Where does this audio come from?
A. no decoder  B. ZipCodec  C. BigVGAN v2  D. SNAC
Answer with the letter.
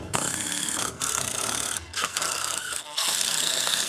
D